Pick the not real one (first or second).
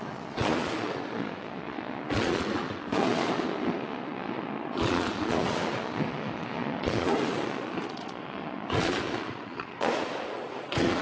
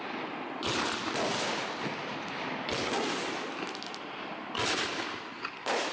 first